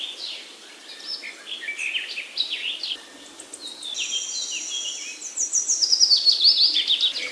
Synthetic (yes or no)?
no